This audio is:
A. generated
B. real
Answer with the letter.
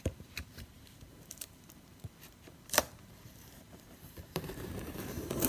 A